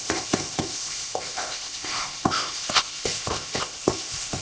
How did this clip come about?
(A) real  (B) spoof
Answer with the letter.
B